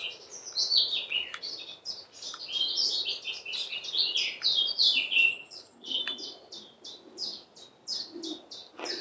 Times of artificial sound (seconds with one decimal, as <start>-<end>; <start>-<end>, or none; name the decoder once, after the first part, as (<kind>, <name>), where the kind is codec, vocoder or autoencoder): 5.3-6.0 (codec, HILCodec)